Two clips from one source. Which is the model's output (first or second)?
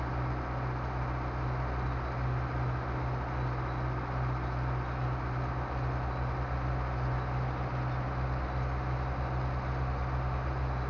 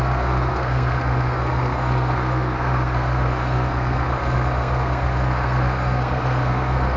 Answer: second